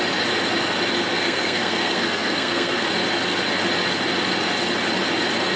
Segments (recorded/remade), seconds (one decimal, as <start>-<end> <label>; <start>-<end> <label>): 0.0-1.1 recorded; 1.1-2.9 remade; 2.9-5.6 recorded